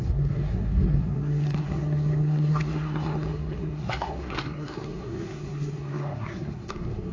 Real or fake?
fake